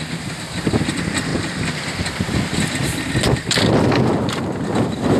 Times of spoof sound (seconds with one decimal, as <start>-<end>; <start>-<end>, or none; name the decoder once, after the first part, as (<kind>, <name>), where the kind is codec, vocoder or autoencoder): none